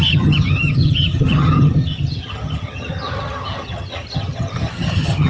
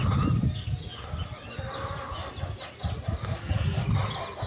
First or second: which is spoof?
first